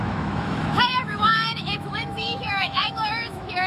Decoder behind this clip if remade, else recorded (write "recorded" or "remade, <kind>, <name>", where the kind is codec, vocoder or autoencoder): remade, autoencoder, DAC-VAE